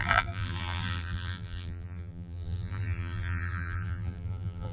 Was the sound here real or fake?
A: fake